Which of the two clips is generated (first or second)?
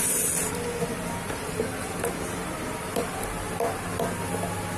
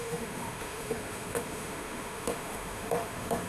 second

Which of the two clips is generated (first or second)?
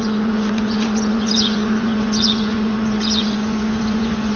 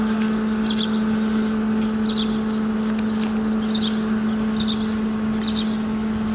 first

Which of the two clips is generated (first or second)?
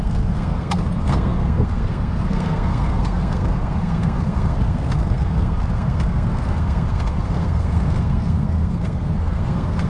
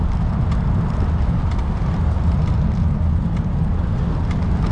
first